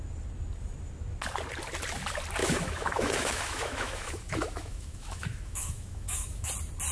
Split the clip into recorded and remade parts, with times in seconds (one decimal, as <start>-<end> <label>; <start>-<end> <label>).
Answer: 0.0-2.4 recorded; 2.4-6.5 remade; 6.5-6.9 recorded